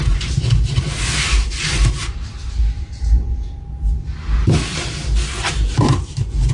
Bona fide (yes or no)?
no